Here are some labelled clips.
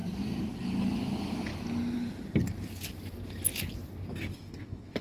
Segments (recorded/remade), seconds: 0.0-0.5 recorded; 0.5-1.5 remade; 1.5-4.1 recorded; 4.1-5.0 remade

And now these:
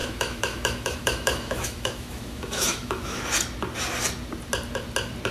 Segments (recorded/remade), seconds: 0.0-3.2 remade; 3.2-5.3 recorded

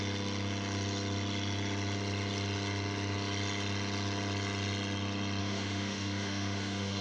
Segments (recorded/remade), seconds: 0.0-5.4 recorded; 5.4-7.0 remade

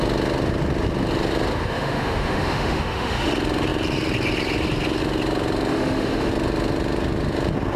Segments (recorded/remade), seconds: 0.0-1.6 recorded; 1.6-3.3 remade; 3.3-5.7 recorded; 5.7-6.3 remade; 6.3-7.8 recorded

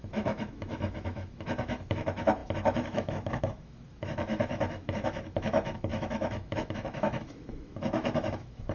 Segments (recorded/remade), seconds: 0.0-8.7 remade

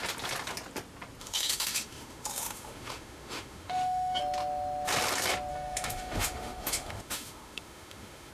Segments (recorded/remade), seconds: 0.0-1.2 recorded; 1.2-4.2 remade; 4.2-5.5 recorded; 5.5-8.3 remade